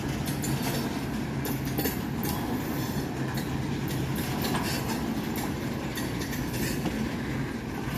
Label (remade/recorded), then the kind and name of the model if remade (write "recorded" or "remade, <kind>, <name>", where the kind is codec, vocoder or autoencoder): recorded